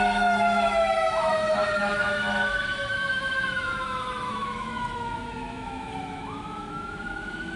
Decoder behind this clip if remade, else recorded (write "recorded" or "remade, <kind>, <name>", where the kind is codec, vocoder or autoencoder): remade, autoencoder, DAC-VAE